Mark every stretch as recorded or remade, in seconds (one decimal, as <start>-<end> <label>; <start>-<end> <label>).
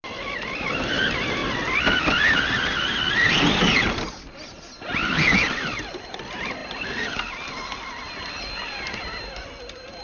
0.0-10.0 recorded